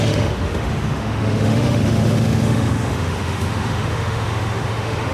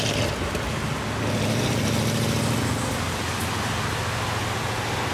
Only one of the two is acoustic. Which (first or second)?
second